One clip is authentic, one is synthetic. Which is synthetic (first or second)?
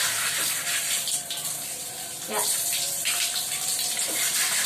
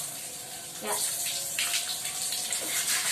first